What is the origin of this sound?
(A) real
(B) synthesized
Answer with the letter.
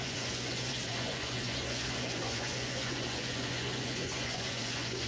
B